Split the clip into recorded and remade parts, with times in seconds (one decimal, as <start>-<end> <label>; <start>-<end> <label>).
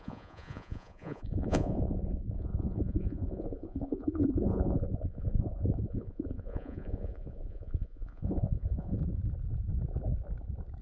0.0-9.0 remade; 9.0-10.8 recorded